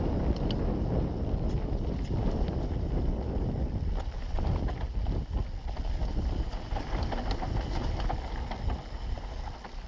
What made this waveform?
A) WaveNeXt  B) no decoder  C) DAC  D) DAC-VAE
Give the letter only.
B